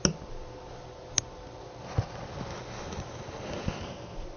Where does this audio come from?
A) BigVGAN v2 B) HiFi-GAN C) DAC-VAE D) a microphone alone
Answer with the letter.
D